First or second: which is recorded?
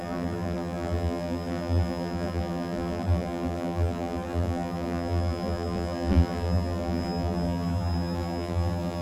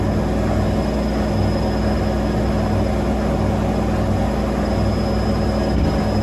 second